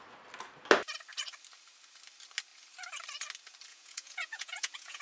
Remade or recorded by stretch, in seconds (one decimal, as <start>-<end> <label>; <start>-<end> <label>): 0.0-3.7 recorded; 3.7-5.0 remade